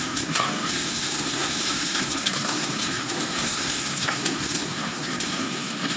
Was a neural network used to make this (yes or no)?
yes